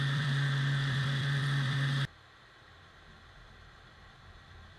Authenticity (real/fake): fake